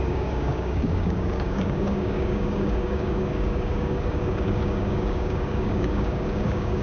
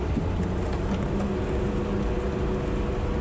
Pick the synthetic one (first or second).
first